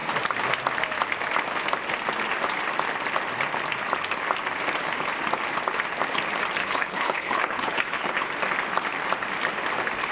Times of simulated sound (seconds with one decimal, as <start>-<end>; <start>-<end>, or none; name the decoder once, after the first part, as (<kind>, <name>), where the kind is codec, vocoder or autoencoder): 6.6-8.1 (codec, HILCodec)